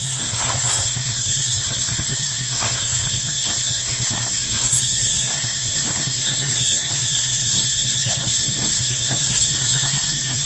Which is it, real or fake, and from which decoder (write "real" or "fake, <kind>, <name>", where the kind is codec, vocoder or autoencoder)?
fake, codec, SNAC